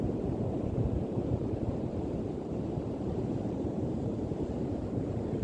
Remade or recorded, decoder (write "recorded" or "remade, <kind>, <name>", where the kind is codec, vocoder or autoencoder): remade, vocoder, BigVGAN v2